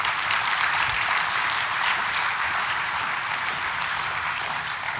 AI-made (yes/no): yes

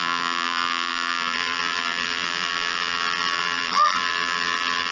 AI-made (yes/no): yes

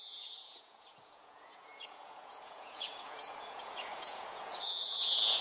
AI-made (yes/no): yes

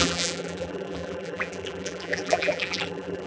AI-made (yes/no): yes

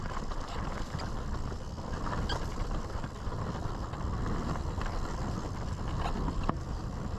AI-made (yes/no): no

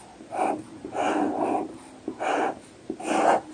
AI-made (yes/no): no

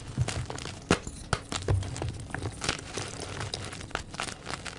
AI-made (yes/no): no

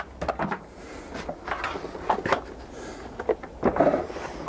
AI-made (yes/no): no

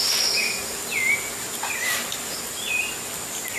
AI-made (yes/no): no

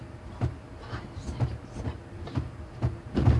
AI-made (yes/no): yes